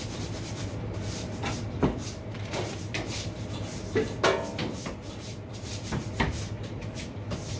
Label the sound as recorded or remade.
remade